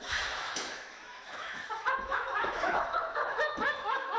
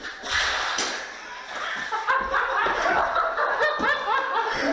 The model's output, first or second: first